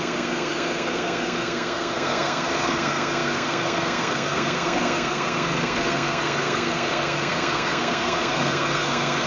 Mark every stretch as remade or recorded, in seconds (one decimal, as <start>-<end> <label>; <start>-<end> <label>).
0.0-9.3 remade